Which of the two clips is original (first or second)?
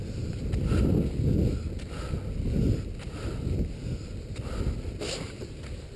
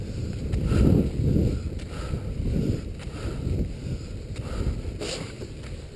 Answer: first